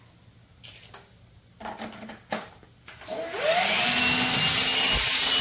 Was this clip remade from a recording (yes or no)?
no